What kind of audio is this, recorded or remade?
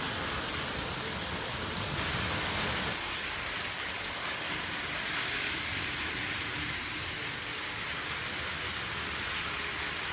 recorded